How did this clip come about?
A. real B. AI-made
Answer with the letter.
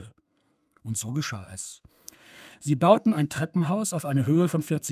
B